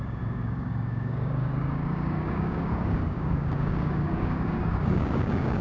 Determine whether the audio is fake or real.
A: fake